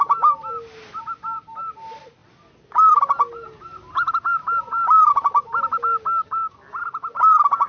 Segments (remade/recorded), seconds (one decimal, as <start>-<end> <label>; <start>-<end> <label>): 0.0-7.7 recorded